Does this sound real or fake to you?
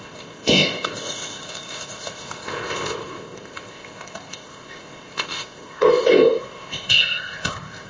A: fake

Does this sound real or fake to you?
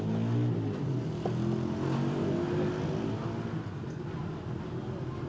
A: real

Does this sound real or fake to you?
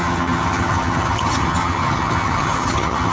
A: fake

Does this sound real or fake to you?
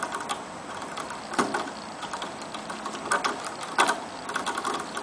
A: real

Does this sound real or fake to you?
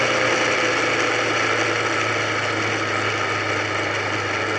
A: real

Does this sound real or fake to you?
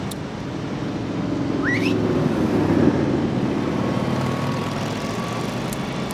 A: real